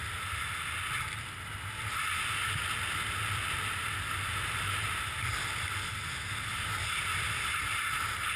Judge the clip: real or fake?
real